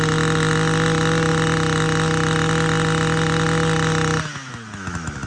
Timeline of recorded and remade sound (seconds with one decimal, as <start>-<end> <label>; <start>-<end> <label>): 0.0-5.3 recorded